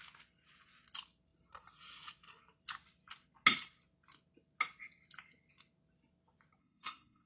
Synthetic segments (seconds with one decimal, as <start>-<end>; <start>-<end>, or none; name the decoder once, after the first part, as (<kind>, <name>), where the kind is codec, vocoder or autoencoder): 6.6-7.3 (codec, SNAC)